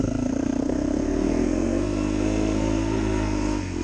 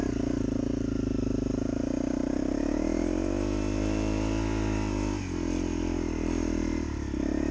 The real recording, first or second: second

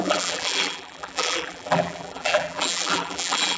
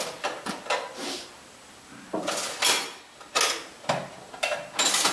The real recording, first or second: second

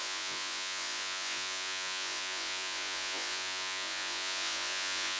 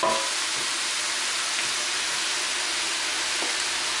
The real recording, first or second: second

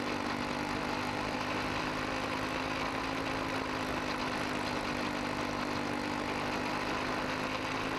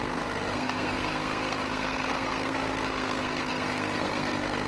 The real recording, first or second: first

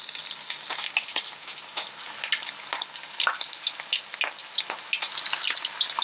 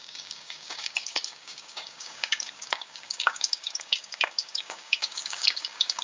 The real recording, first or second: first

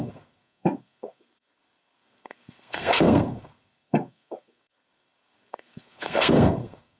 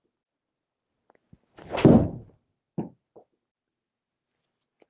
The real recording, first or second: second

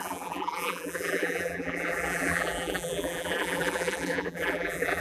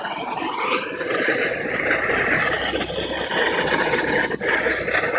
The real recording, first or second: second